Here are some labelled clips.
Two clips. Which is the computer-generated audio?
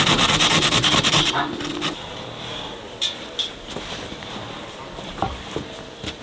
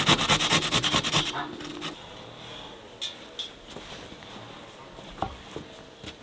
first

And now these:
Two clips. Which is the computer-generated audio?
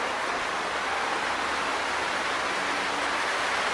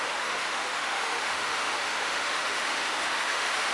second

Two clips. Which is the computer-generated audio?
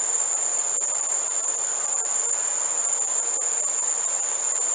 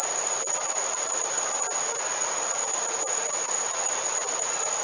second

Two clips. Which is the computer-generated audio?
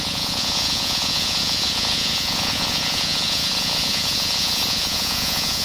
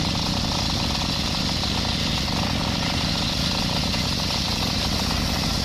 first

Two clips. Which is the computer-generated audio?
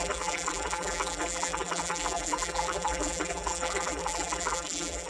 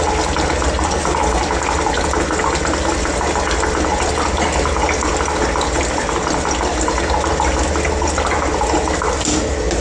first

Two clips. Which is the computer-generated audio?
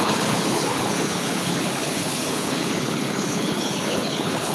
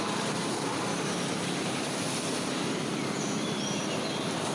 first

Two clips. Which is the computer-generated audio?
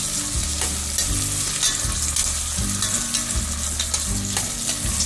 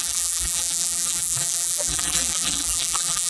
second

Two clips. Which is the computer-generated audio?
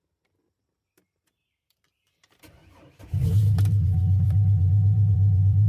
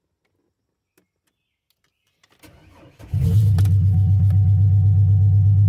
first